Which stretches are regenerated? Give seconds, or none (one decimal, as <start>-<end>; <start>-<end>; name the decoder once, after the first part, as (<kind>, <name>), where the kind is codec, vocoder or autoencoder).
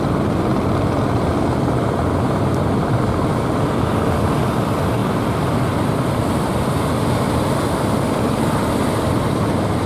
5.0-6.6 (vocoder, BigVGAN v2)